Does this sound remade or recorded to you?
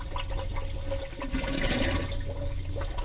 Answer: recorded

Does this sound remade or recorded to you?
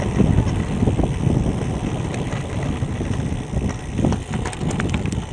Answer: recorded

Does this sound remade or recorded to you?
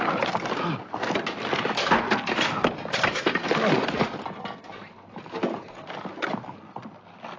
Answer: recorded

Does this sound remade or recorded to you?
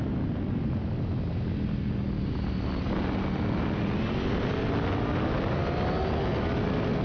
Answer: recorded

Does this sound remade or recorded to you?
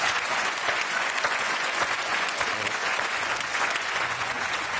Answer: remade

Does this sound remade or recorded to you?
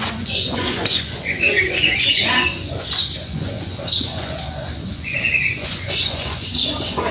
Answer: remade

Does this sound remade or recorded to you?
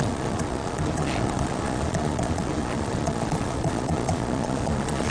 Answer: remade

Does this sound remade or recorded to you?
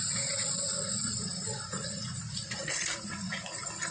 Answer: remade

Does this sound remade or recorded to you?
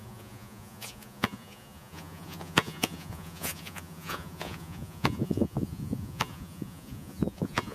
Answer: remade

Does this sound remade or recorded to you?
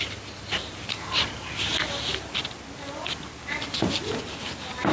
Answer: recorded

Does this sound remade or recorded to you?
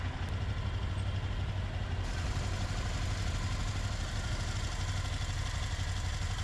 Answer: recorded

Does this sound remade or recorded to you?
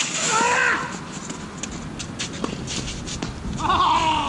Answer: recorded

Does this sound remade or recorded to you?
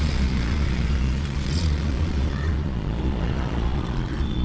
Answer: remade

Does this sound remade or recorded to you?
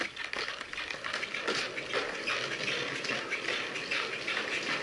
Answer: recorded